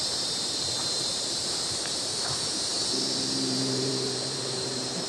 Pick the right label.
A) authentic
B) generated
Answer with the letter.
B